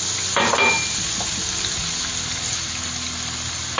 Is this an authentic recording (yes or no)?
yes